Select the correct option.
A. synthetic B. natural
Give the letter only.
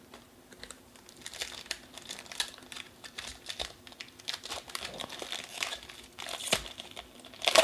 A